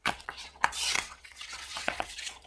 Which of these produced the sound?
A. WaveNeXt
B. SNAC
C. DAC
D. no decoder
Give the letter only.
A